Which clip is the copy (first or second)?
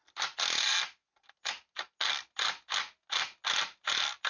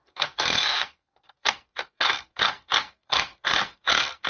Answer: second